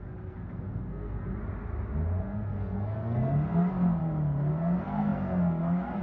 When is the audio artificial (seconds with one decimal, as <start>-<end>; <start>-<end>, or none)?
0.0-1.4; 2.2-4.0; 4.5-6.0